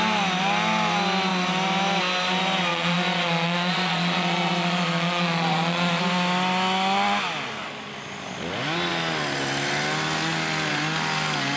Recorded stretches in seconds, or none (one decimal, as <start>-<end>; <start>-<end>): 0.0-2.7; 6.0-11.6